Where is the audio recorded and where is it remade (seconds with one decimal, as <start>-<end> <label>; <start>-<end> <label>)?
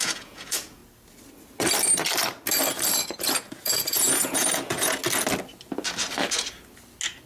0.0-0.8 remade; 0.8-2.9 recorded; 2.9-5.0 remade; 5.0-7.3 recorded